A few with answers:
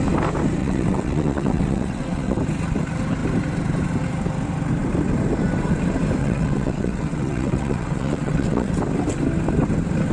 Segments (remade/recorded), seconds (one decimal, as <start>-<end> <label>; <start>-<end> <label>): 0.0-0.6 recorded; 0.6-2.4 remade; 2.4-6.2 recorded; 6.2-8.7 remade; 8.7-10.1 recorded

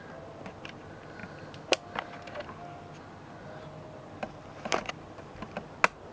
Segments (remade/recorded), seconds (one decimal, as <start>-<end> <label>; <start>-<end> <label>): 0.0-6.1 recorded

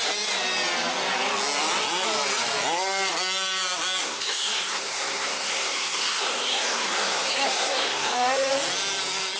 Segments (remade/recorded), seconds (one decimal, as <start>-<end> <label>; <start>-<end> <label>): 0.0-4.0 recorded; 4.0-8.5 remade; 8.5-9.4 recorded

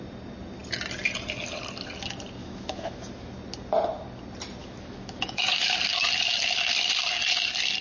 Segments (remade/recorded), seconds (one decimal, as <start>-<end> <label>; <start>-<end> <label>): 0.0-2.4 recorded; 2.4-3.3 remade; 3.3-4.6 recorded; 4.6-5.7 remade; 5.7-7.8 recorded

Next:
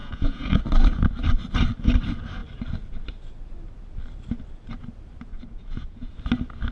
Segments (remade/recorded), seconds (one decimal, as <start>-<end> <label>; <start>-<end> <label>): 0.0-0.6 remade; 0.6-5.3 recorded; 5.3-6.1 remade; 6.1-6.7 recorded